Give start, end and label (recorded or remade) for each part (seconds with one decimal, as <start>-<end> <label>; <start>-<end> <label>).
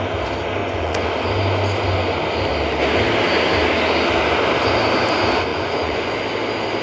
0.0-0.6 recorded; 0.6-1.1 remade; 1.1-5.5 recorded; 5.5-6.1 remade; 6.1-6.8 recorded